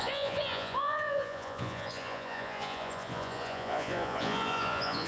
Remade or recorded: remade